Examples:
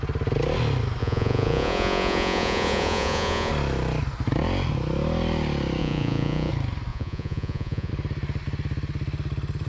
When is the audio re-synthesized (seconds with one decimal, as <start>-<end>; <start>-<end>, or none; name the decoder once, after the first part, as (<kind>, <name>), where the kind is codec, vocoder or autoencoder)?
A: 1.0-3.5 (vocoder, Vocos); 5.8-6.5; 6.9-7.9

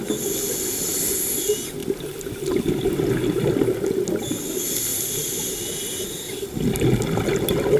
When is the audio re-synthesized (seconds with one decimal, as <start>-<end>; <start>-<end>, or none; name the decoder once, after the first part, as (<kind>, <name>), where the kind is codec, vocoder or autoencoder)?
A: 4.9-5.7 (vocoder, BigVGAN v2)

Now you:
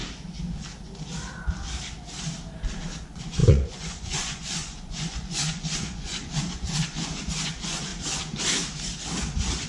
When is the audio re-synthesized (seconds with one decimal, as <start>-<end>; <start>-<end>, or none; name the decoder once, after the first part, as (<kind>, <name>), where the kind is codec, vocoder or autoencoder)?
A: 3.0-7.9 (vocoder, Vocos)

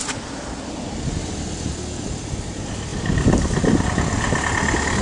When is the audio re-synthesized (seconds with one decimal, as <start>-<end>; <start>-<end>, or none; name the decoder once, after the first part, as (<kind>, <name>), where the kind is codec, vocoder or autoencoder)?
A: none

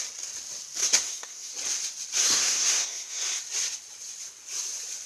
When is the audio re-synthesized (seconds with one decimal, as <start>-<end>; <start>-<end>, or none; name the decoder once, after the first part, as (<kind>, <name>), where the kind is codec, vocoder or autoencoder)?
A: 0.8-1.5 (codec, SNAC); 2.2-3.4

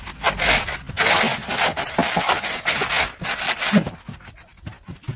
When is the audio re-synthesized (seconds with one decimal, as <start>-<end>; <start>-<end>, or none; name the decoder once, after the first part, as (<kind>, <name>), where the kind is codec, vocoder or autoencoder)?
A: 1.3-4.4 (vocoder, BigVGAN v2)

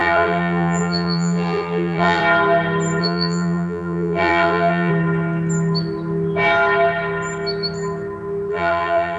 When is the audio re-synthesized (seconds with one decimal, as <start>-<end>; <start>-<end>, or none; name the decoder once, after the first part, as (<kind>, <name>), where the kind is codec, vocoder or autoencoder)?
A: 0.0-2.2 (vocoder, BigVGAN v2); 3.0-4.9; 8.5-9.2